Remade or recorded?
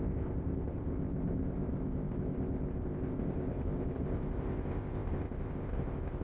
remade